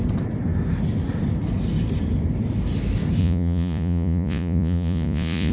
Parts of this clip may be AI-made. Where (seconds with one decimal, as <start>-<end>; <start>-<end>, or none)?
3.2-5.5